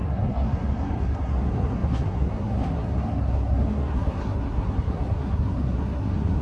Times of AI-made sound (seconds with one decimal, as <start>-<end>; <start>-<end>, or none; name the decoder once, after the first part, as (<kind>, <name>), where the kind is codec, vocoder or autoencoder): 0.0-6.4 (codec, SNAC)

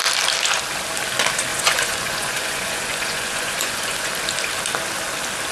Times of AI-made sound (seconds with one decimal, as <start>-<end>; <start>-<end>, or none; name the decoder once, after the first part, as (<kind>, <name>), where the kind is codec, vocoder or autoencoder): 1.5-4.1 (vocoder, Vocos)